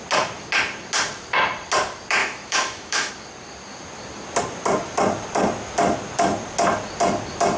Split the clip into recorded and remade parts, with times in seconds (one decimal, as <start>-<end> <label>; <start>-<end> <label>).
0.0-2.2 recorded; 2.2-3.1 remade; 3.1-7.6 recorded